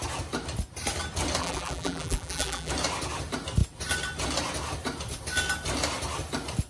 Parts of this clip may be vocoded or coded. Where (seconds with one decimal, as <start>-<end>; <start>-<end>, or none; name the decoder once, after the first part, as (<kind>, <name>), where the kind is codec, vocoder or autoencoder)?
1.4-2.7 (vocoder, BigVGAN v2)